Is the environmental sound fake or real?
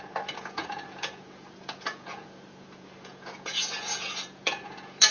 fake